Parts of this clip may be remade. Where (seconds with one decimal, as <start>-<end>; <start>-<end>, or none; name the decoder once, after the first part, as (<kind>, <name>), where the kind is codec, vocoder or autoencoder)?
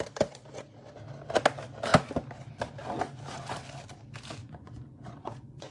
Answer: 4.4-5.7 (vocoder, Vocos)